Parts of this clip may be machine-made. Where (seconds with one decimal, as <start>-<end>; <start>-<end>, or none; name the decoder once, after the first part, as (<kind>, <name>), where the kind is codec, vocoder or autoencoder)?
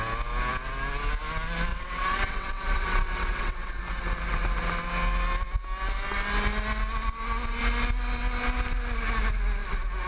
1.7-3.8 (vocoder, WaveNeXt)